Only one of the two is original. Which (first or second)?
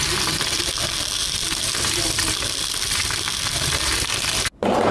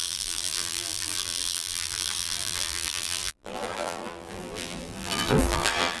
first